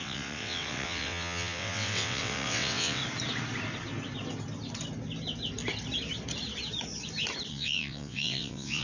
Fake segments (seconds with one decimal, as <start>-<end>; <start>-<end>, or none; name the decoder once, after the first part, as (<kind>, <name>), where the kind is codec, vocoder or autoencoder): 0.0-3.0 (vocoder, WaveNeXt); 7.5-8.8